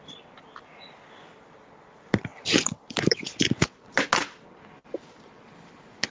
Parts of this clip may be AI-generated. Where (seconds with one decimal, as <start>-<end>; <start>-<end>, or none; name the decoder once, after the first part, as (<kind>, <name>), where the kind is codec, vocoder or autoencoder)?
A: none

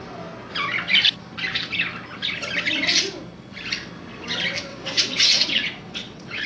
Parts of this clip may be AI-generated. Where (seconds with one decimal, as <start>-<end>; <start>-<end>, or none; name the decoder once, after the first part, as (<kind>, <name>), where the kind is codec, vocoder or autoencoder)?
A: 4.7-6.5 (vocoder, WaveNeXt)